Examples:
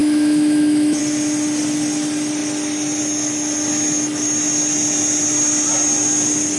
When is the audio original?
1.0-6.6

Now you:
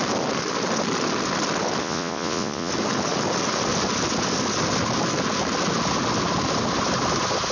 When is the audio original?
0.0-1.8; 2.7-7.5

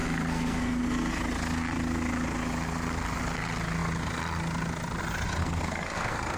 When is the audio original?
1.1-5.4

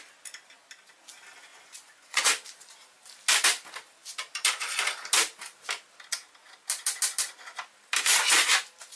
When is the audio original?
0.0-1.5; 2.3-9.0

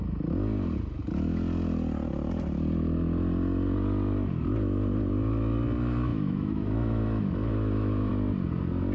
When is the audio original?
0.0-6.1; 8.1-8.9

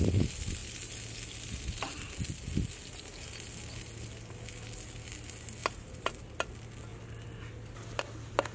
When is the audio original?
0.0-5.6; 6.2-8.5

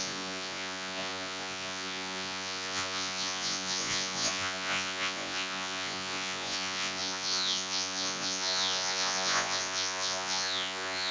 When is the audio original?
none